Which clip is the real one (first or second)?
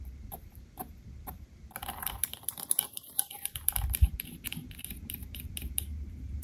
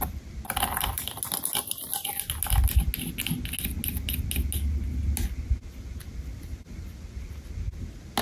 second